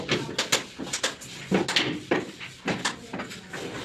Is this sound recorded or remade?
recorded